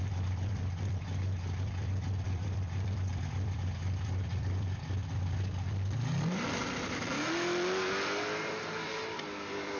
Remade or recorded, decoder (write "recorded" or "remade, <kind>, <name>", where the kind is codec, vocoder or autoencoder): remade, vocoder, BigVGAN v2